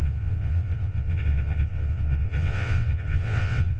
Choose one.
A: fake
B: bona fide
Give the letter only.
A